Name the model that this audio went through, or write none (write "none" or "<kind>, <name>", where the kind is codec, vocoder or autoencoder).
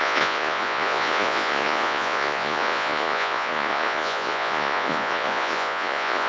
vocoder, Vocos